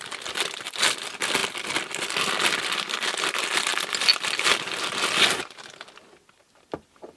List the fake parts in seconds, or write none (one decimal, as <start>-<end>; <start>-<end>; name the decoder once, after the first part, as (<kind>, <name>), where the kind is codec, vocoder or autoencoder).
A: none